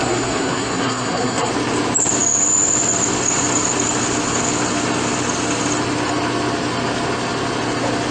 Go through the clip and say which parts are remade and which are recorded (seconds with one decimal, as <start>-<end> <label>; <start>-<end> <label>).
0.0-1.5 remade; 1.5-8.1 recorded